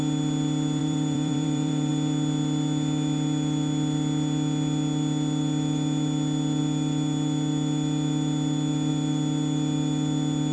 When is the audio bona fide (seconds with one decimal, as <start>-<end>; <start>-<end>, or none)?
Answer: 0.0-0.8; 1.9-10.5